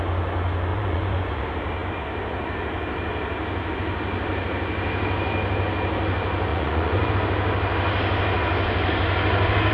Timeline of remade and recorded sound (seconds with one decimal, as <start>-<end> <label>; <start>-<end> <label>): 0.0-0.7 recorded; 0.7-1.4 remade; 1.4-6.5 recorded; 6.5-7.1 remade; 7.1-9.7 recorded